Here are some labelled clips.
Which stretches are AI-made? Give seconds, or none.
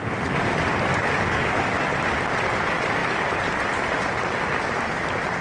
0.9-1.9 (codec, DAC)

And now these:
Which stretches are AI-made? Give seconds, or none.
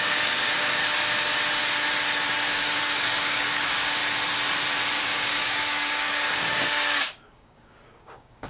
0.0-0.8 (codec, DAC); 2.5-4.0; 5.0-8.5